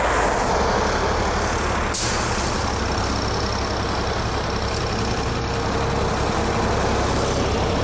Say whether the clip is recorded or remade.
recorded